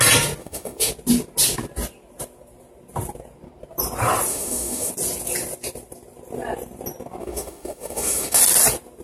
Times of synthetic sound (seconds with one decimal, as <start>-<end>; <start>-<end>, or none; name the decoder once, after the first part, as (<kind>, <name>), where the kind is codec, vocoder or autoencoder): 0.4-0.9 (autoencoder, DAC-VAE); 4.3-4.9; 7.2-8.4